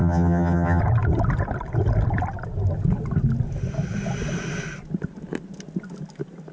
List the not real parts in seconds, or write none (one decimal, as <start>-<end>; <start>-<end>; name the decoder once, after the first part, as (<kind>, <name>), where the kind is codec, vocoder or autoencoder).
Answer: 0.0-0.8 (vocoder, HiFi-GAN)